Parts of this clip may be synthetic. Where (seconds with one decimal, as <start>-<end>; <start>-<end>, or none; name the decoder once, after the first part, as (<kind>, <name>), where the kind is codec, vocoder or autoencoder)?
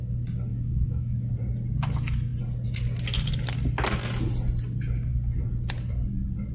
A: 0.5-1.3 (autoencoder, DAC-VAE)